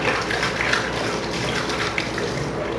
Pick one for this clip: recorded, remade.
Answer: remade